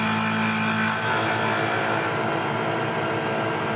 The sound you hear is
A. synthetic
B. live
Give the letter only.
B